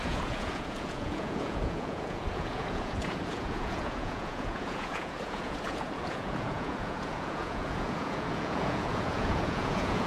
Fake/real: fake